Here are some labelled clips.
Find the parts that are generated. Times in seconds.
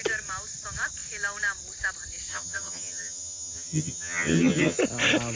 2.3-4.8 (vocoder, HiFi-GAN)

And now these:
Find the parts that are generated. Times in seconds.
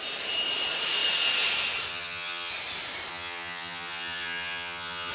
1.9-2.5 (vocoder, HiFi-GAN); 3.1-5.1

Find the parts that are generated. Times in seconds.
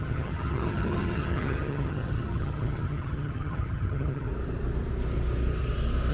0.0-4.3 (vocoder, HiFi-GAN)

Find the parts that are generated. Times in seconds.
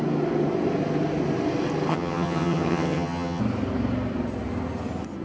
1.9-3.4 (vocoder, HiFi-GAN)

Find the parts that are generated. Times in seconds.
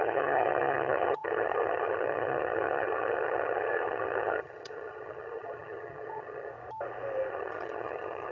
0.0-6.5 (vocoder, HiFi-GAN); 7.3-8.3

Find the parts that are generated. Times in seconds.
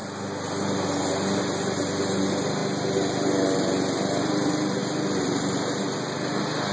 none